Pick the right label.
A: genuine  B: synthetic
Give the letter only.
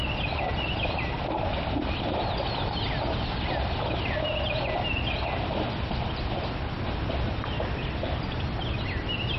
A